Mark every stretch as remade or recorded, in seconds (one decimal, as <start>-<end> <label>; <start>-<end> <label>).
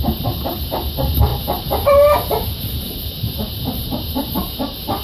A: 0.0-5.0 recorded